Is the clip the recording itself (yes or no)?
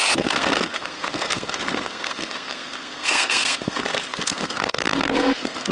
no